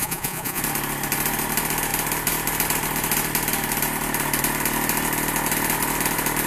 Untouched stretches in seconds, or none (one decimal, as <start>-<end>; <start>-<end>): 0.6-6.5